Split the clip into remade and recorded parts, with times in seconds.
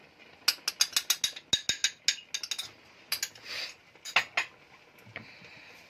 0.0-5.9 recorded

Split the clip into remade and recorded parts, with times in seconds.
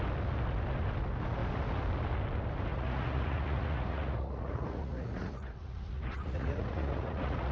0.0-2.7 recorded; 2.7-7.5 remade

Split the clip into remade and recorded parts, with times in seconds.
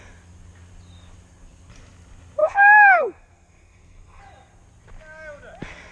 0.0-2.4 recorded; 2.4-4.2 remade; 4.2-5.9 recorded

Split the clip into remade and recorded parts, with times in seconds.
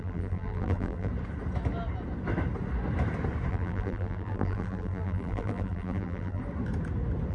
0.0-1.1 remade; 1.1-3.5 recorded; 3.5-6.4 remade; 6.4-7.3 recorded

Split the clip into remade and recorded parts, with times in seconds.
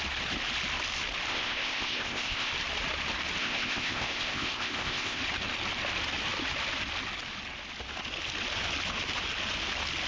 0.0-1.3 recorded; 1.3-2.5 remade; 2.5-3.4 recorded; 3.4-5.2 remade; 5.2-10.1 recorded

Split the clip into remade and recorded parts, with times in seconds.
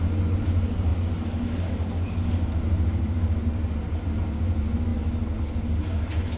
0.0-6.4 recorded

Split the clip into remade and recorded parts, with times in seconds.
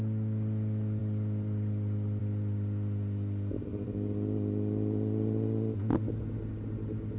0.0-1.0 recorded; 1.0-2.2 remade; 2.2-7.2 recorded